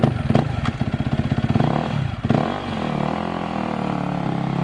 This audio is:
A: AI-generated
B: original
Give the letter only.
B